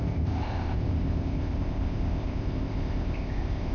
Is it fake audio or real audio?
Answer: fake